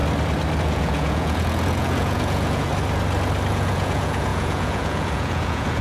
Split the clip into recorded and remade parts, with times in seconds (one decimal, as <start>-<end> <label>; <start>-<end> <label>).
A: 0.0-0.6 recorded; 0.6-2.7 remade; 2.7-3.5 recorded; 3.5-5.8 remade